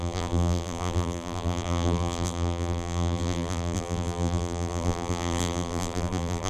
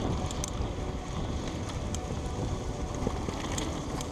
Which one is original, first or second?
second